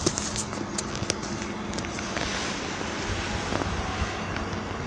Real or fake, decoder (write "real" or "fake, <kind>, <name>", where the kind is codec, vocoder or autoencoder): real